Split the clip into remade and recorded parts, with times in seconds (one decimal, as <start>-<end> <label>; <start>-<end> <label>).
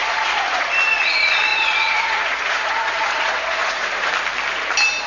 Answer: 0.0-0.7 remade; 0.7-1.5 recorded; 1.5-4.1 remade; 4.1-5.1 recorded